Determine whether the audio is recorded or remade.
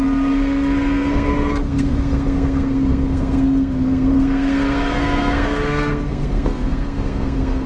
remade